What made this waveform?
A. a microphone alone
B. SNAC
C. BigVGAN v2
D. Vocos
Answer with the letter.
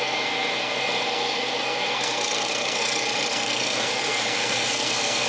B